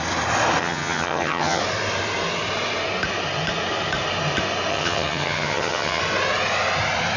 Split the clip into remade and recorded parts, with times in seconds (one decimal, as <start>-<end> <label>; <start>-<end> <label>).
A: 0.0-0.6 recorded; 0.6-1.6 remade; 1.6-4.7 recorded; 4.7-6.0 remade; 6.0-7.2 recorded